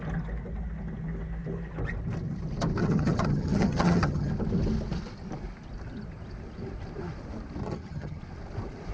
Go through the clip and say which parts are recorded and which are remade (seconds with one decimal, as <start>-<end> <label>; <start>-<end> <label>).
0.0-2.8 recorded; 2.8-4.3 remade; 4.3-7.6 recorded; 7.6-8.2 remade; 8.2-8.9 recorded